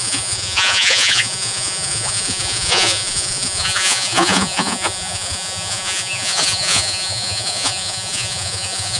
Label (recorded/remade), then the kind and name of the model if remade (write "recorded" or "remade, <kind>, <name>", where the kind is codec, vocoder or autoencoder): remade, vocoder, Vocos